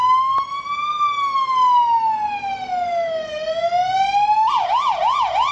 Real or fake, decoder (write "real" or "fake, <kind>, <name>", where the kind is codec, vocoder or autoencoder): real